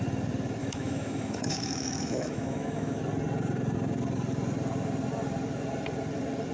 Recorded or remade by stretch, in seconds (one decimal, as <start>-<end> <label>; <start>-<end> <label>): 0.0-0.6 recorded; 0.6-3.0 remade; 3.0-6.5 recorded